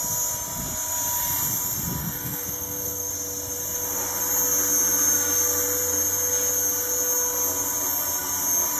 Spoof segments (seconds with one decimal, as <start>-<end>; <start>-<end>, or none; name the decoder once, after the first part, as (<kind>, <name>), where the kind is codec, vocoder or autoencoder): 2.0-3.1 (codec, SNAC)